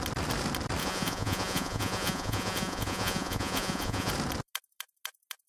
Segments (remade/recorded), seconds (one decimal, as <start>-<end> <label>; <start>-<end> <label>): 0.0-0.8 recorded; 0.8-4.1 remade; 4.1-5.5 recorded